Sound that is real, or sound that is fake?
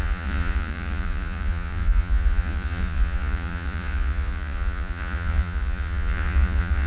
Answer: fake